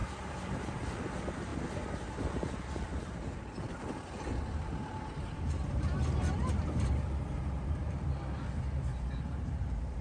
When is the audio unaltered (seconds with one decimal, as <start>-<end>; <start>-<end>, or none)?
1.5-2.2